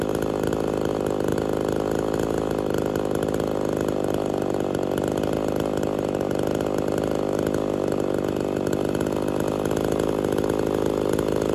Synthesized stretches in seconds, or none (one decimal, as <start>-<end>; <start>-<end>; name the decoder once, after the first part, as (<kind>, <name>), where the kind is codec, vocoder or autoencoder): none